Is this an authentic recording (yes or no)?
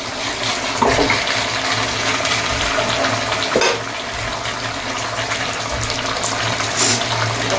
yes